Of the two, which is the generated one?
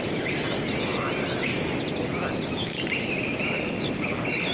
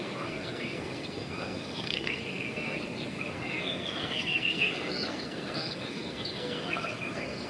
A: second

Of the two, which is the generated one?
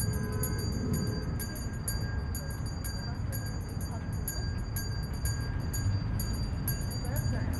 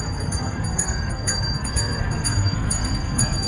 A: second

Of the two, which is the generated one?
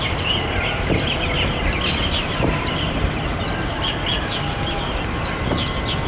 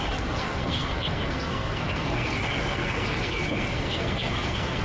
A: second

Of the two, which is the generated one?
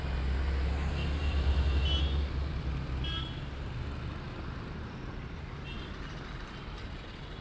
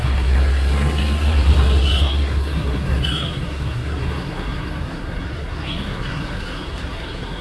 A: second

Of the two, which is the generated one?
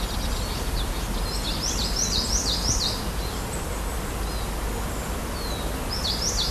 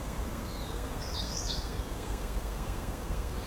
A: second